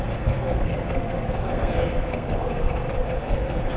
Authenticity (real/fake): fake